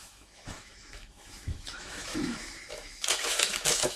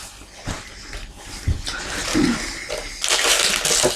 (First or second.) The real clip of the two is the second